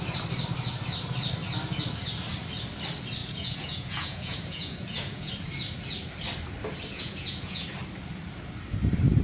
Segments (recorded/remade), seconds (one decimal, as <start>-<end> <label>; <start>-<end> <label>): 0.0-3.2 recorded; 3.2-5.3 remade; 5.3-6.9 recorded; 6.9-7.7 remade; 7.7-9.2 recorded